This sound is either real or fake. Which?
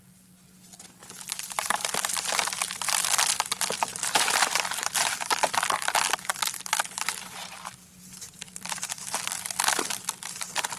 fake